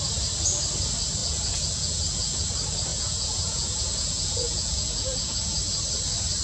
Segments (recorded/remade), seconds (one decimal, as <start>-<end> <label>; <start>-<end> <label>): 0.0-1.2 recorded; 1.2-2.4 remade; 2.4-2.9 recorded; 2.9-5.6 remade; 5.6-6.4 recorded